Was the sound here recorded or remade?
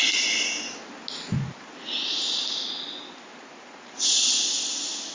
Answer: recorded